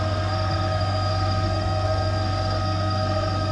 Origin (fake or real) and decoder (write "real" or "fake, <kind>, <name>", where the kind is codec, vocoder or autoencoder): fake, codec, SNAC